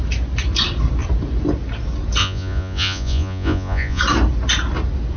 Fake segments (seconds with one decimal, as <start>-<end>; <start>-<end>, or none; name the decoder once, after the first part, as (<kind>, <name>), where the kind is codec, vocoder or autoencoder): 2.2-4.0 (vocoder, Vocos)